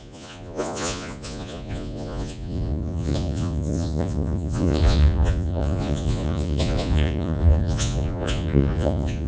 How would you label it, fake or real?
fake